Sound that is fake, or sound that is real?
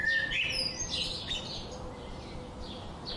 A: real